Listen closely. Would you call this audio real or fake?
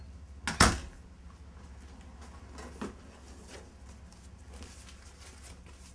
real